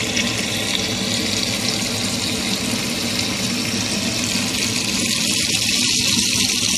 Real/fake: real